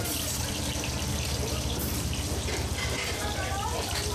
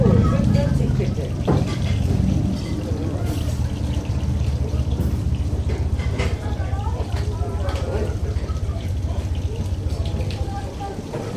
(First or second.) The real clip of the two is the first